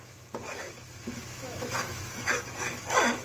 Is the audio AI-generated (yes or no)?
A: yes